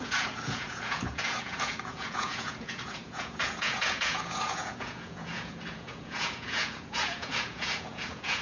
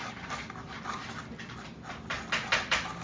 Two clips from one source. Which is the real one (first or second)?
second